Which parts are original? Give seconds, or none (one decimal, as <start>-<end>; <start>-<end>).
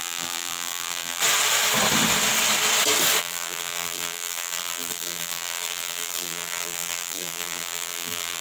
1.2-3.2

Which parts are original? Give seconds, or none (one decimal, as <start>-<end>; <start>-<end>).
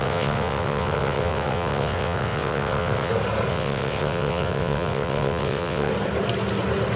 3.1-3.5; 5.9-7.0